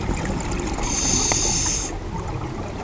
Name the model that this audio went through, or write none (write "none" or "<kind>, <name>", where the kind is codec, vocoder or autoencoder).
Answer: none